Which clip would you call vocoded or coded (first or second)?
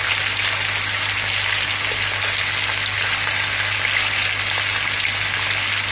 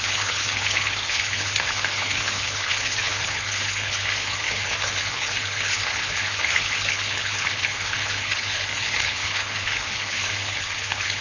second